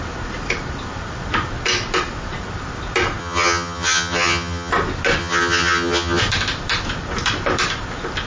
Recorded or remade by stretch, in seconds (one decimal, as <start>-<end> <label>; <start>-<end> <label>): 0.0-3.2 recorded; 3.2-4.7 remade; 4.7-5.2 recorded; 5.2-6.2 remade; 6.2-8.3 recorded

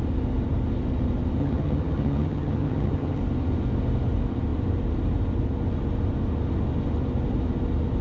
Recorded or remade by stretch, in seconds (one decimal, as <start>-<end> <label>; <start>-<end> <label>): 0.0-1.4 recorded; 1.4-3.2 remade; 3.2-8.0 recorded